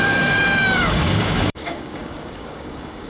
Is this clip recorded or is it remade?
remade